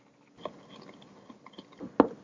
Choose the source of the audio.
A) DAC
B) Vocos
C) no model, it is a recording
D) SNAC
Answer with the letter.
C